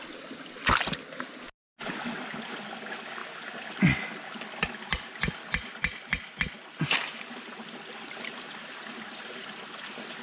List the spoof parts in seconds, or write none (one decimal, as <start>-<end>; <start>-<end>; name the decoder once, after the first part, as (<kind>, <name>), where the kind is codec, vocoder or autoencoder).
none